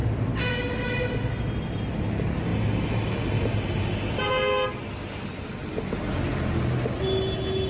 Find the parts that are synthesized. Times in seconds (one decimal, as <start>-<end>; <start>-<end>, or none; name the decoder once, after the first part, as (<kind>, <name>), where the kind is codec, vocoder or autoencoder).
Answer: none